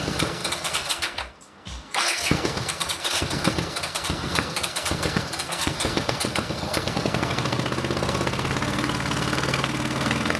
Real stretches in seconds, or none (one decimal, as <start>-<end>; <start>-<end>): none